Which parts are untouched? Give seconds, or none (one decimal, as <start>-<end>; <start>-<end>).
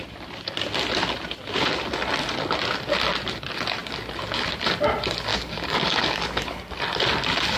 0.0-5.3; 6.6-7.6